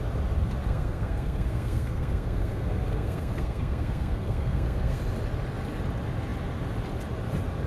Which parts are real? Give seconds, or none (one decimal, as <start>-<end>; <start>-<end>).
0.0-0.6; 5.0-7.7